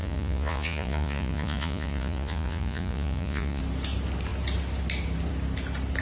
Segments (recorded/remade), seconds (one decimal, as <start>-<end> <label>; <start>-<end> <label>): 0.0-3.6 remade; 3.6-6.0 recorded